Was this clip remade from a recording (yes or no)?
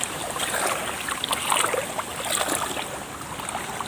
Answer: no